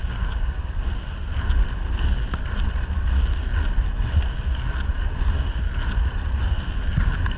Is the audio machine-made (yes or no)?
no